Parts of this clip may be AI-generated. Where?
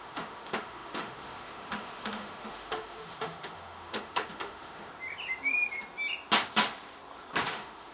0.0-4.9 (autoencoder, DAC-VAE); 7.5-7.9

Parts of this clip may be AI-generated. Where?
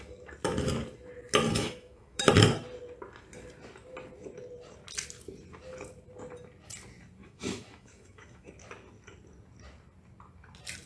1.5-2.3 (autoencoder, DAC-VAE); 7.2-8.5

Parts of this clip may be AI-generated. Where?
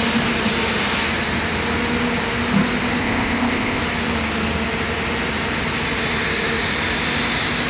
3.0-3.8 (codec, ZipCodec)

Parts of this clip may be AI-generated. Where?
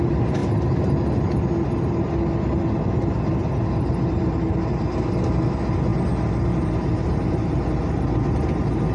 none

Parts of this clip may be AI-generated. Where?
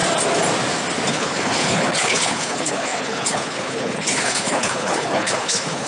1.1-5.9 (codec, HILCodec)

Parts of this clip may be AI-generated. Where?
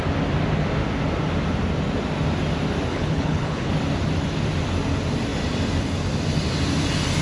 2.9-3.7 (codec, HILCodec)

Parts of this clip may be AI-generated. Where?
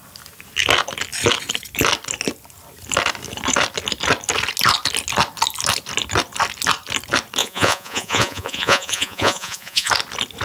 7.4-9.9 (vocoder, Vocos)